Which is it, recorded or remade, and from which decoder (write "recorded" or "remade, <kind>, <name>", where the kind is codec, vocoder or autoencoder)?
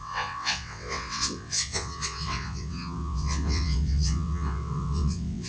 remade, vocoder, WaveNeXt